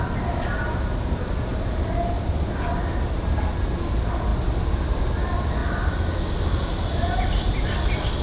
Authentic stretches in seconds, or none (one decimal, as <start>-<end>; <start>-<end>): 0.0-8.2